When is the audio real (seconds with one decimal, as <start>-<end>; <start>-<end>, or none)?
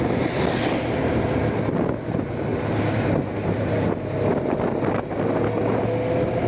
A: 0.0-6.5